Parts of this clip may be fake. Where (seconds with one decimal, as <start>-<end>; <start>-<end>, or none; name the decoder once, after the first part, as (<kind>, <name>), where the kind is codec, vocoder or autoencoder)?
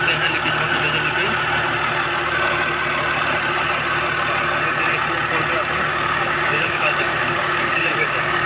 5.9-8.5 (codec, DAC)